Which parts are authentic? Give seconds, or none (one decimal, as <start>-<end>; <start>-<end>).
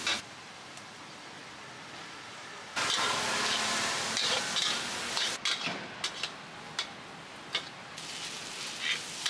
0.0-9.3